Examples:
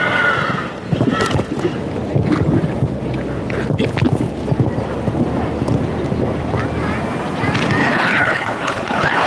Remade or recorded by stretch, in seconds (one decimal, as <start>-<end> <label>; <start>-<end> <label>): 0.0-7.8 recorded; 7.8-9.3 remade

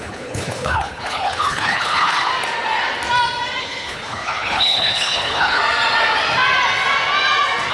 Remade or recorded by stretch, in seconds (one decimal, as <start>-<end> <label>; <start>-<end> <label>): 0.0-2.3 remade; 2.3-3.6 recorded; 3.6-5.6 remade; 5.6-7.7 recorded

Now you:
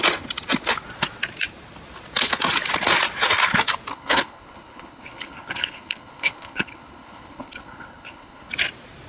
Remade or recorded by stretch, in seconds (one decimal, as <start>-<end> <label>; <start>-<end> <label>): 0.0-3.9 recorded; 3.9-8.5 remade; 8.5-9.1 recorded

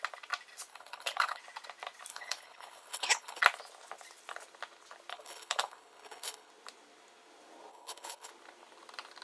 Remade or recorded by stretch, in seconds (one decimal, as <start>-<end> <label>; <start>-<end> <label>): 0.0-0.7 recorded; 0.7-1.4 remade; 1.4-2.1 recorded; 2.1-3.4 remade; 3.4-5.1 recorded; 5.1-6.5 remade; 6.5-7.7 recorded; 7.7-8.3 remade; 8.3-9.2 recorded

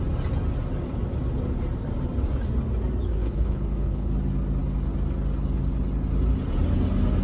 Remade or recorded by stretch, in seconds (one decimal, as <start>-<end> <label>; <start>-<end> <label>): 0.0-3.2 recorded; 3.2-4.1 remade; 4.1-7.2 recorded

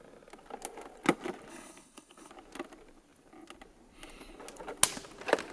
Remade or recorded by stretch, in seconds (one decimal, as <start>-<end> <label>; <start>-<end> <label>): 0.0-1.5 recorded; 1.5-2.3 remade; 2.3-5.5 recorded

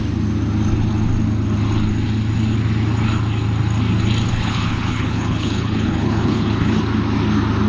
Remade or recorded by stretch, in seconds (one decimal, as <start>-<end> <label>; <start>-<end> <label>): 0.0-4.3 recorded; 4.3-6.8 remade; 6.8-7.7 recorded